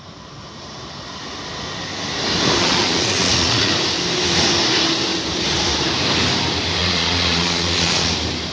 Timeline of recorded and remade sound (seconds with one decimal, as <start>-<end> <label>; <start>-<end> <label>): 0.0-2.6 recorded; 2.6-3.7 remade; 3.7-6.8 recorded; 6.8-8.1 remade; 8.1-8.5 recorded